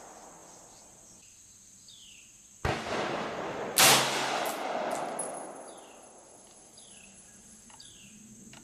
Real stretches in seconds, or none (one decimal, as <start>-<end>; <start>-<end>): 0.0-8.6